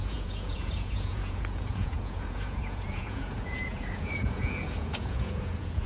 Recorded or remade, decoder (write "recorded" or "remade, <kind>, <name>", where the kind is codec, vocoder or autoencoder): remade, vocoder, Vocos